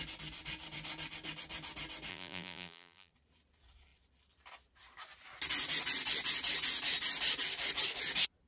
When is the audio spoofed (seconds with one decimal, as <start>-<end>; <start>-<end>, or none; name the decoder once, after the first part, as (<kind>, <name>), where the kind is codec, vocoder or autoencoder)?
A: 2.1-3.1 (vocoder, BigVGAN v2)